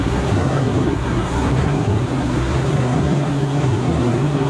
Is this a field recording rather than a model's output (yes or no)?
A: no